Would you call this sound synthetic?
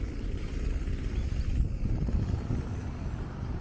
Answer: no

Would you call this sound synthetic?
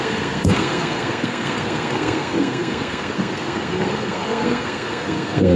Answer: yes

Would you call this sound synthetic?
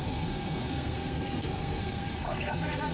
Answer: yes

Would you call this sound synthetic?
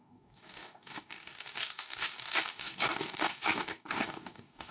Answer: yes